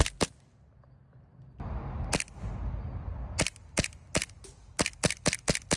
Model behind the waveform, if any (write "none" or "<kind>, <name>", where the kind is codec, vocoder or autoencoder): none